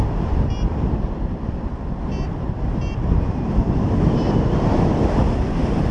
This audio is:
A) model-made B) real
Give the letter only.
B